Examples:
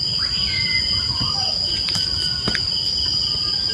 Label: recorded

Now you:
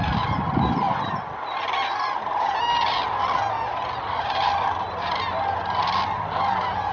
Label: recorded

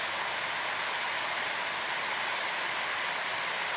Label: recorded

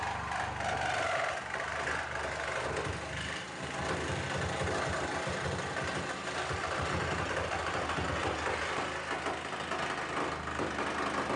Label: recorded